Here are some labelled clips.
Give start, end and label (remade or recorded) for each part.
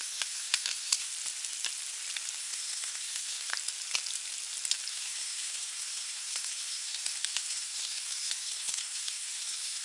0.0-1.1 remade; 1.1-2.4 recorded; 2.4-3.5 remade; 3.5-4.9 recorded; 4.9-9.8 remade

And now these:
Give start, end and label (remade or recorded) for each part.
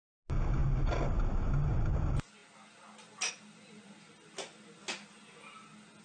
0.0-6.0 recorded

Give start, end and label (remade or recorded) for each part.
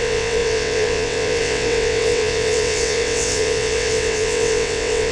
0.0-5.1 remade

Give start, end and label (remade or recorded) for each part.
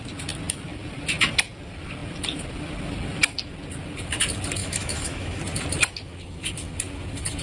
0.0-4.6 recorded; 4.6-5.4 remade; 5.4-7.4 recorded